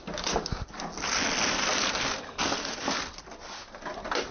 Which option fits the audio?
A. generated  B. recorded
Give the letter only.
B